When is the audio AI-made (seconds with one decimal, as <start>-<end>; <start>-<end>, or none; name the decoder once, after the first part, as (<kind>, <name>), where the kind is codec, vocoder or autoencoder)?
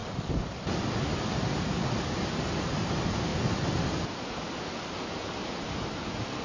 0.0-1.7 (vocoder, BigVGAN v2); 3.3-4.4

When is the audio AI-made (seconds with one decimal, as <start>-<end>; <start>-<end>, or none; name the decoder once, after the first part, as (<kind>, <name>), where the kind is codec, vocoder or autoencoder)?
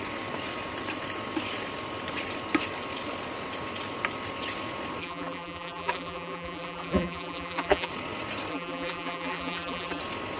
5.0-7.9 (vocoder, BigVGAN v2); 8.5-10.0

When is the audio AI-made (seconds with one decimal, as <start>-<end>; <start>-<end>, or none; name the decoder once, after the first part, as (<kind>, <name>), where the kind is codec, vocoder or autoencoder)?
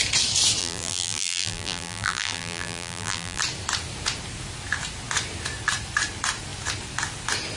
0.6-3.4 (vocoder, BigVGAN v2)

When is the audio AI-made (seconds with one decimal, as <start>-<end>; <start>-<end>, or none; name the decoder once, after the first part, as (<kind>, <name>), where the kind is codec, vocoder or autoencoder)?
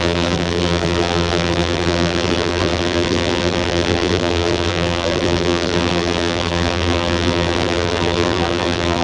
0.0-9.0 (vocoder, BigVGAN v2)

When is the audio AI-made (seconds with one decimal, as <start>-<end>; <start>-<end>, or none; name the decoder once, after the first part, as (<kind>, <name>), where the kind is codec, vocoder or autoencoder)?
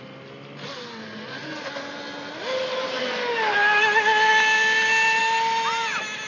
none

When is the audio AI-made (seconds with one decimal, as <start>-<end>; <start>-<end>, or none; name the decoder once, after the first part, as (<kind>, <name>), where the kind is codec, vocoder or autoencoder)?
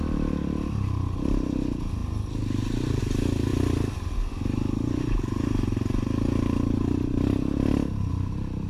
none